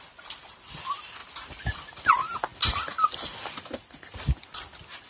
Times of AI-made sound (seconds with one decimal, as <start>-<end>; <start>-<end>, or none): 1.2-2.1; 2.5-3.8

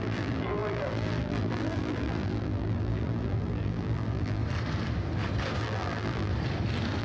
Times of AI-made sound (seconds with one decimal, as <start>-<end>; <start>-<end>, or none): 0.0-4.4; 5.6-6.3

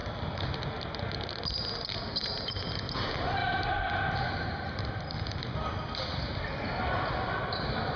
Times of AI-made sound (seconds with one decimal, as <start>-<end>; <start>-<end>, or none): none

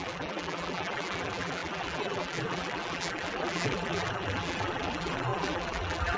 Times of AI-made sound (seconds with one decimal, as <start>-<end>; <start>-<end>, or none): 0.0-6.2

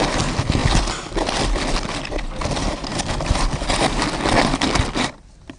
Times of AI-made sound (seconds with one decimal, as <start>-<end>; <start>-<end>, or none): 0.0-5.6

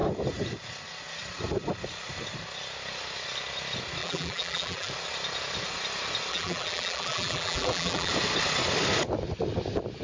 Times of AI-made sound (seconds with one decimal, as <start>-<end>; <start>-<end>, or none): 4.0-4.9; 6.3-8.1